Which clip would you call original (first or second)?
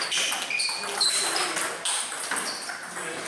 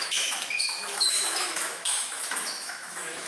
first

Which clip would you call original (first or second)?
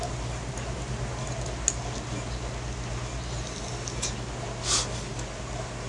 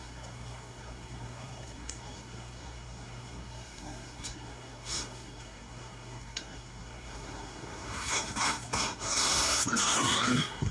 first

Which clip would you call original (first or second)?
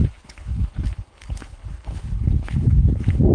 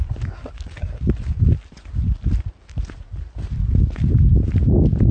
second